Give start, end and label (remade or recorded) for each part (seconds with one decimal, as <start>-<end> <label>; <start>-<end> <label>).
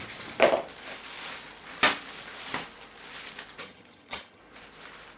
0.0-3.6 recorded; 3.6-4.4 remade; 4.4-5.2 recorded